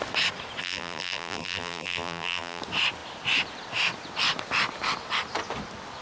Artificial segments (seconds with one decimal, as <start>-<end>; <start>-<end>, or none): 0.6-2.6